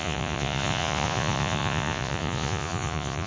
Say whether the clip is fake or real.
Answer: fake